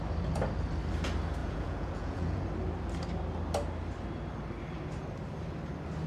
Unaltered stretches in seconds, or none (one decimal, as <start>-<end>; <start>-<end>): 0.0-1.4; 2.4-6.1